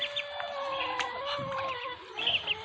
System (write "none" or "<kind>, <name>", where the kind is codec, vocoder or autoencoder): none